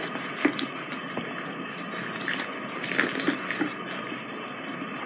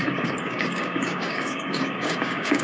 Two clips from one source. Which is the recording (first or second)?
first